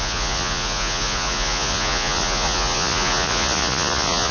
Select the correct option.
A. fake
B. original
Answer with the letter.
A